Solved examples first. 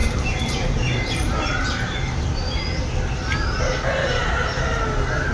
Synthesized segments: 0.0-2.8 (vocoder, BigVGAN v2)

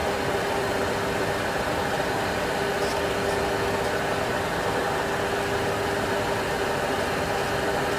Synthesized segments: 0.0-2.3 (vocoder, BigVGAN v2)

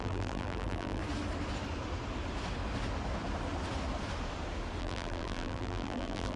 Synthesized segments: 0.0-1.0 (vocoder, BigVGAN v2); 4.8-6.4

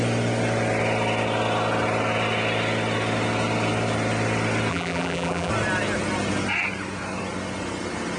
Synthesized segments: 4.7-5.5 (vocoder, BigVGAN v2)